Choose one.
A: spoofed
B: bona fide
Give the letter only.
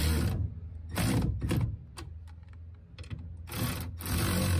B